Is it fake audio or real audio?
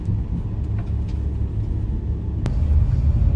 real